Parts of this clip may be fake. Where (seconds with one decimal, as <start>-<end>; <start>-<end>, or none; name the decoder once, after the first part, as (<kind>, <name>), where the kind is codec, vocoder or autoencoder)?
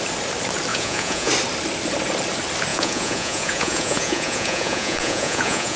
0.7-1.3 (vocoder, Vocos); 2.7-5.8